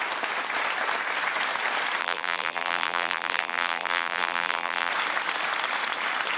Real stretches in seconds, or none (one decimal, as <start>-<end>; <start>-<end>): 0.0-2.0; 4.9-6.4